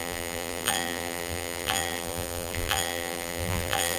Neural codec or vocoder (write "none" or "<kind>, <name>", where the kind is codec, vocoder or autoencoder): vocoder, BigVGAN v2